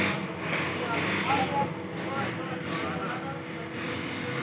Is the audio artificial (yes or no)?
no